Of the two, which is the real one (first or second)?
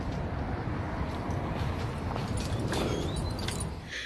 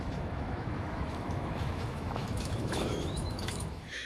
first